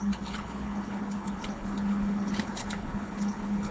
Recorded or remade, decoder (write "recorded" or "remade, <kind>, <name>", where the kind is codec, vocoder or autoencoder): remade, codec, HILCodec